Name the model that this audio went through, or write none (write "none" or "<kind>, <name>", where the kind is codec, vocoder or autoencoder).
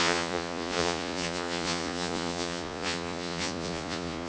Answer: vocoder, Vocos